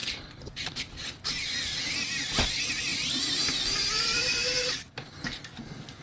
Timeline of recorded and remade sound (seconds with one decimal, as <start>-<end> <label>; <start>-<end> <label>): 0.0-1.5 remade; 1.5-2.9 recorded; 2.9-6.0 remade